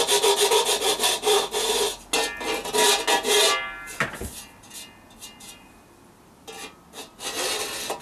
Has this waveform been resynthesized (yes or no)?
no